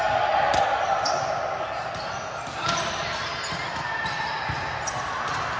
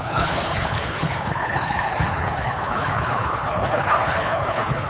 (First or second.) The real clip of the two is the first